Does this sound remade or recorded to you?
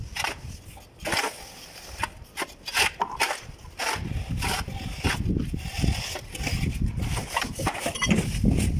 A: recorded